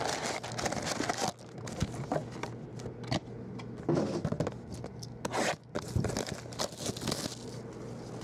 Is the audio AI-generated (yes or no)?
no